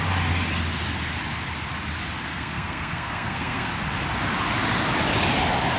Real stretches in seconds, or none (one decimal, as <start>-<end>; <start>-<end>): 0.0-2.3; 3.7-5.8